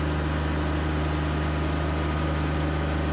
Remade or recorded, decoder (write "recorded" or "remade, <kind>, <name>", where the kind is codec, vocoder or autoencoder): recorded